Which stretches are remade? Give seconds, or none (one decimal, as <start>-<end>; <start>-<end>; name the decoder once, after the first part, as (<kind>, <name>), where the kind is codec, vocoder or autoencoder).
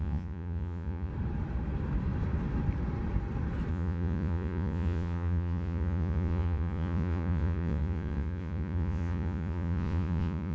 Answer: 0.0-1.1 (vocoder, Vocos); 3.7-10.5